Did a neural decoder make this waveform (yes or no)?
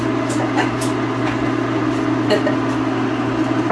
no